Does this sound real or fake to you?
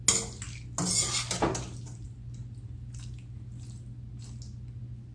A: real